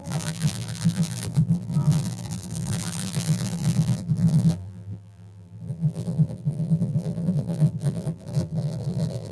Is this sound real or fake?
fake